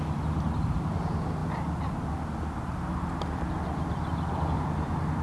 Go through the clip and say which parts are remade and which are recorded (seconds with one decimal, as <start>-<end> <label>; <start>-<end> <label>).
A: 0.0-5.2 recorded